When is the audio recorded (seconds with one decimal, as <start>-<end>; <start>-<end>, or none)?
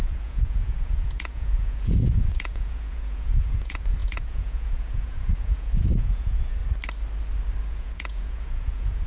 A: 6.6-7.7